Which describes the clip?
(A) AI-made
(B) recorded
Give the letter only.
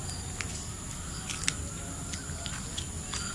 B